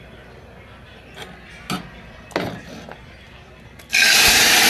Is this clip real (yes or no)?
yes